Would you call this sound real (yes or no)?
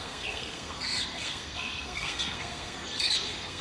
no